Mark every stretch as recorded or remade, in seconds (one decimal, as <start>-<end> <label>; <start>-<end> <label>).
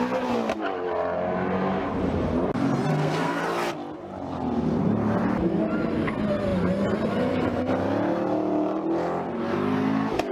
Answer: 0.0-2.9 recorded; 2.9-3.4 remade; 3.4-10.3 recorded